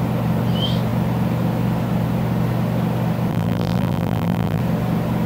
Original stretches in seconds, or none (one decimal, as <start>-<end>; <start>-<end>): 0.0-3.3; 4.6-5.3